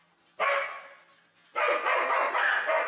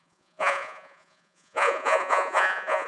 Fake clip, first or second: second